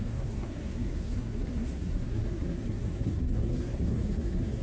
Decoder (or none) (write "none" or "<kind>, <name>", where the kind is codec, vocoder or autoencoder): codec, SNAC